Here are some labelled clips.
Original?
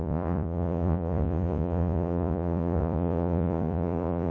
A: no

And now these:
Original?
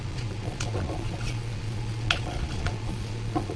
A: no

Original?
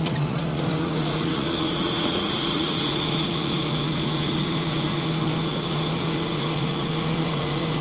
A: no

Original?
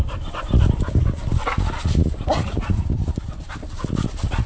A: yes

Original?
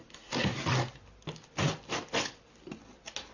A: yes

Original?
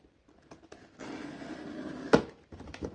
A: yes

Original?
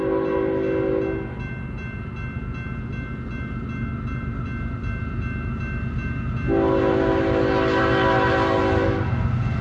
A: yes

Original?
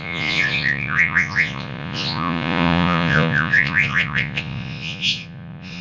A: no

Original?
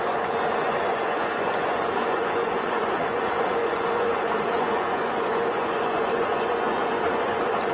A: no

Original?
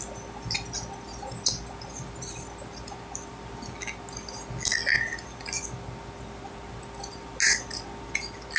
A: yes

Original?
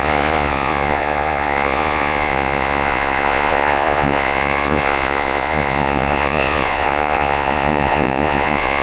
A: no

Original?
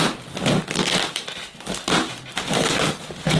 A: yes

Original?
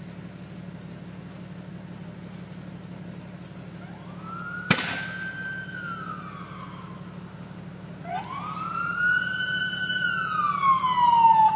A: yes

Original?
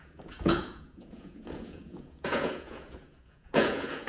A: no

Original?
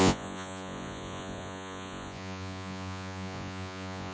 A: no